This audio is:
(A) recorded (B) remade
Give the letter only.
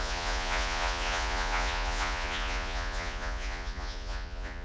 B